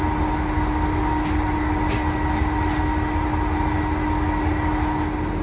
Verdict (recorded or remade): recorded